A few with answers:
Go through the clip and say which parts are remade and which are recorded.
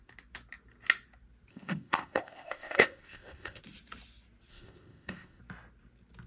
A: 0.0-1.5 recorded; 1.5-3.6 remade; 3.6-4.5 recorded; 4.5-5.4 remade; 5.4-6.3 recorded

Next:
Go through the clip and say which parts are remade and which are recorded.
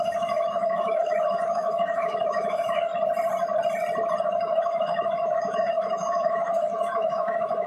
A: 0.0-2.9 remade; 2.9-4.2 recorded; 4.2-7.7 remade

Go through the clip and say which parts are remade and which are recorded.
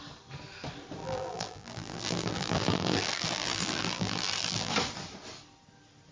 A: 0.0-1.0 recorded; 1.0-4.7 remade; 4.7-6.1 recorded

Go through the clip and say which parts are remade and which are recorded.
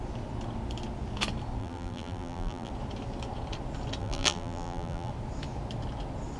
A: 0.0-1.6 recorded; 1.6-2.7 remade; 2.7-4.0 recorded; 4.0-5.1 remade; 5.1-6.4 recorded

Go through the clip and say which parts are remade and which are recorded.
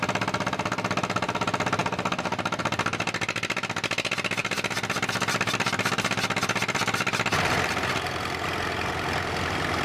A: 0.0-9.8 recorded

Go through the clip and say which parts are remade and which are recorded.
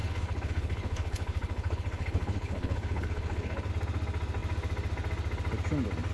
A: 0.0-3.7 remade; 3.7-6.1 recorded